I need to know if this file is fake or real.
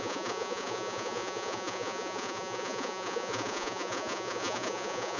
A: fake